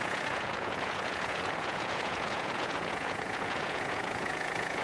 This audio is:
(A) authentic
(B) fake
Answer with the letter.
B